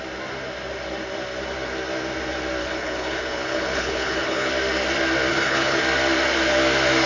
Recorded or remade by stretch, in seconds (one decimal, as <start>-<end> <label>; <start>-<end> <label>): 0.0-2.6 recorded; 2.6-4.5 remade; 4.5-5.3 recorded; 5.3-5.8 remade; 5.8-7.1 recorded